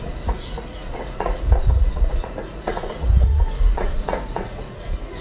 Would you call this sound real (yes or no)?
no